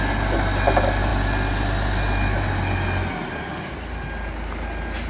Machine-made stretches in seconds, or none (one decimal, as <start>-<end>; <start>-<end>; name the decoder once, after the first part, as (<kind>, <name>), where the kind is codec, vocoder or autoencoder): none